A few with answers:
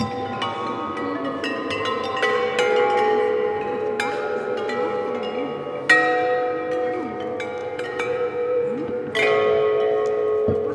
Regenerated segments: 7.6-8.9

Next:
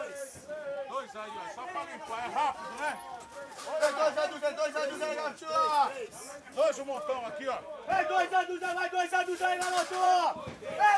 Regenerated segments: 0.0-5.3; 5.9-11.0

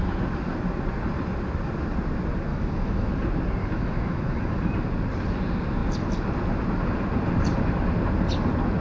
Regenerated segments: 2.5-3.1; 3.6-4.7

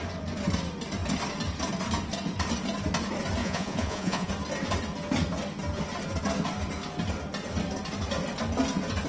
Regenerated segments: 3.4-4.3